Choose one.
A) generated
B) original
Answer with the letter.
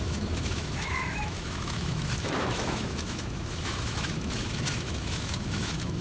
A